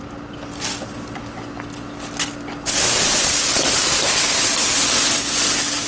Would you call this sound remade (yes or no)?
no